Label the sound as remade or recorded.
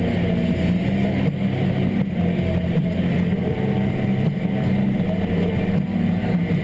recorded